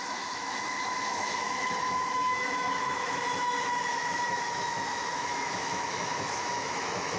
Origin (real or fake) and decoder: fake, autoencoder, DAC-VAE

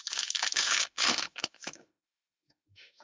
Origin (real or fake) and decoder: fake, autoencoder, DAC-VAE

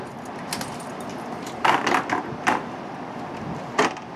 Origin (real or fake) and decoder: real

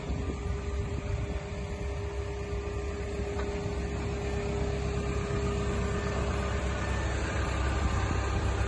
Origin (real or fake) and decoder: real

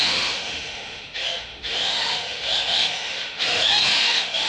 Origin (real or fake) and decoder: fake, autoencoder, DAC-VAE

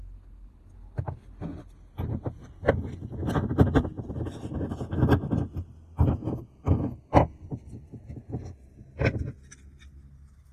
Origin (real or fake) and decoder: real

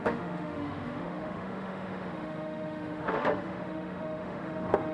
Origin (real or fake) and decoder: fake, autoencoder, DAC-VAE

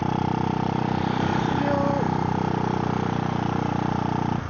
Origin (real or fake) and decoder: real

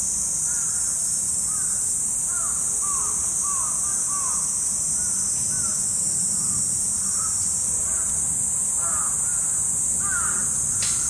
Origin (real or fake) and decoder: real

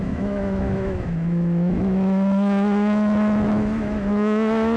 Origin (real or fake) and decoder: fake, autoencoder, DAC-VAE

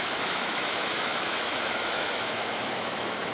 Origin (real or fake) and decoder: fake, autoencoder, DAC-VAE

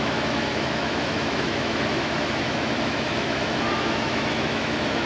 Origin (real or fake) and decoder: fake, autoencoder, DAC-VAE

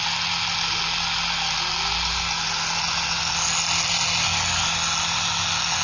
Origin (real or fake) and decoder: real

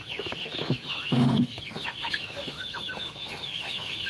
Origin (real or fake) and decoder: fake, autoencoder, DAC-VAE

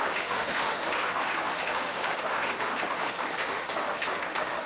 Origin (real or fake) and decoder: fake, autoencoder, DAC-VAE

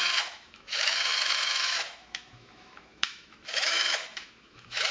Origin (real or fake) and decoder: fake, autoencoder, DAC-VAE